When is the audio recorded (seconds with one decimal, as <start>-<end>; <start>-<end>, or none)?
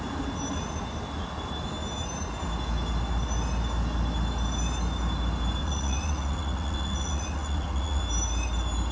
0.0-5.6; 8.0-8.9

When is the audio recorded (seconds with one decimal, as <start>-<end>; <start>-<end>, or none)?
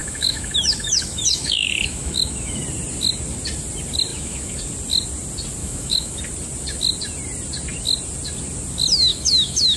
2.6-4.1; 4.6-5.6; 6.2-9.1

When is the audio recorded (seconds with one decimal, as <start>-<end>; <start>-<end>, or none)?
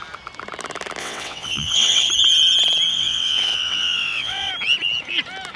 0.0-1.0; 2.1-2.9; 4.5-5.6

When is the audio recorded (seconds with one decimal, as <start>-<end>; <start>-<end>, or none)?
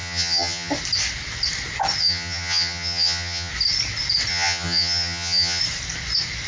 0.7-2.0; 3.5-4.3; 5.6-6.5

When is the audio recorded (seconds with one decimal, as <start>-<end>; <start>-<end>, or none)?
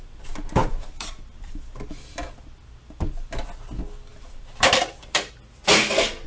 0.0-0.6; 1.5-4.1; 5.3-6.3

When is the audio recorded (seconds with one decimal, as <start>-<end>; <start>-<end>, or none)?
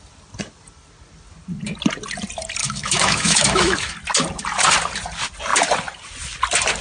0.0-2.6; 3.9-6.8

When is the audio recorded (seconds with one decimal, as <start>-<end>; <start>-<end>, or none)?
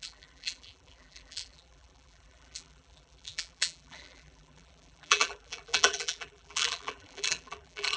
none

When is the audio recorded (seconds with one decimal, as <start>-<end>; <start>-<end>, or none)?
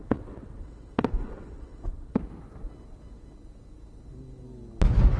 2.2-5.2